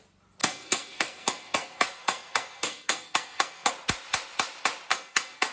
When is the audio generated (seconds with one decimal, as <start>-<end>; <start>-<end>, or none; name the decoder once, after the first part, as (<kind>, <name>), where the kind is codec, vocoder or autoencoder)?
0.4-3.7 (codec, SNAC); 4.9-5.5